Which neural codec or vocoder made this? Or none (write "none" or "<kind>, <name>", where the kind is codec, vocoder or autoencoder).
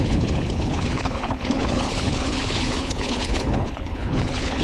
codec, HILCodec